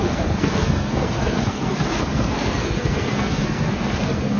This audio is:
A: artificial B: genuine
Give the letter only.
A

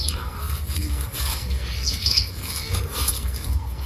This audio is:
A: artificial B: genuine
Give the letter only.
A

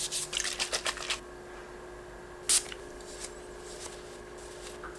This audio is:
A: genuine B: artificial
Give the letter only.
A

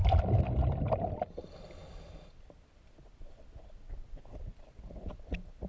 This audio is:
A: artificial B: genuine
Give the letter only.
B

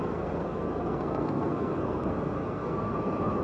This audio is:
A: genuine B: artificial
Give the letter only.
B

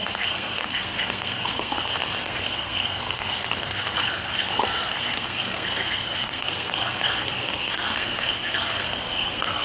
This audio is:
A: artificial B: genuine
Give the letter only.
A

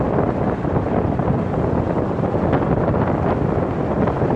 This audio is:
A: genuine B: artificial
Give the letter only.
A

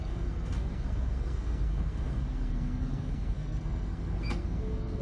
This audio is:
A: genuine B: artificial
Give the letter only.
B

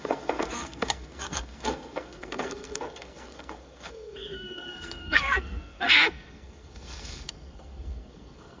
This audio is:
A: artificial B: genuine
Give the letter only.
A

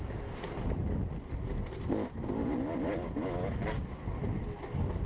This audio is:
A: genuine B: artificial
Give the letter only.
A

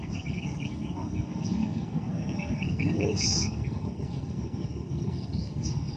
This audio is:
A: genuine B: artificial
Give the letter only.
B